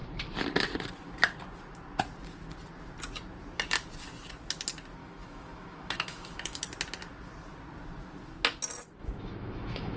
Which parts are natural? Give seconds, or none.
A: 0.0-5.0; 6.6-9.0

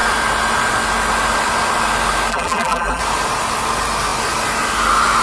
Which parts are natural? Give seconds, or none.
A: 0.0-2.3; 3.0-5.2

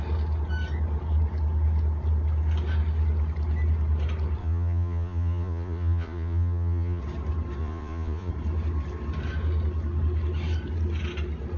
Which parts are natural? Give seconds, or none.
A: 0.0-4.4; 7.0-7.6; 8.3-11.6

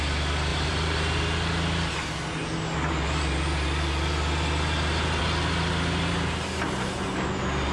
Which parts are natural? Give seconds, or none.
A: 0.0-0.5; 1.2-7.7